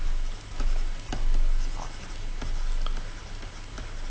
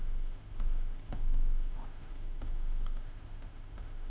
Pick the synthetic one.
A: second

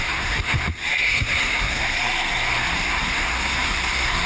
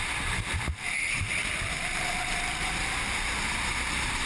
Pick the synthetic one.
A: first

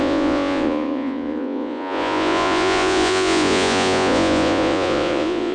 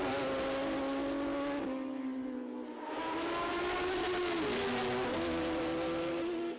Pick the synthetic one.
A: first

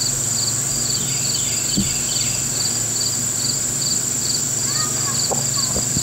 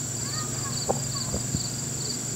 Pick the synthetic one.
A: second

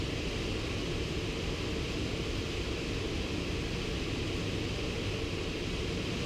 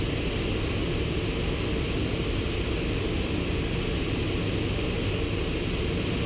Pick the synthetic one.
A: first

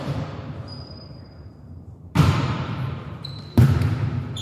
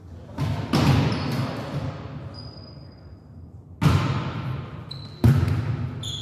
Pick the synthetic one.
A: first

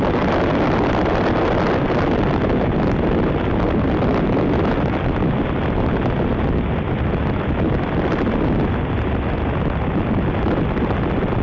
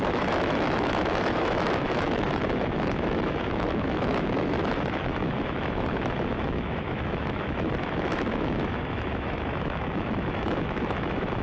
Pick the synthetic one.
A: second